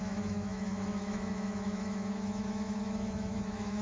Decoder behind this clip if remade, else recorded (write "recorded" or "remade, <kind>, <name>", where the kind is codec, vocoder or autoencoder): remade, autoencoder, DAC-VAE